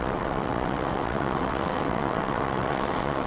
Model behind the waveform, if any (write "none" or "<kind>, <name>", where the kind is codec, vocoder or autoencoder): vocoder, WaveNeXt